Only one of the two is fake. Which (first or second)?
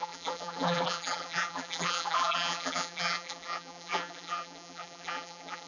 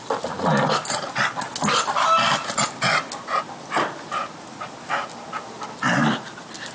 first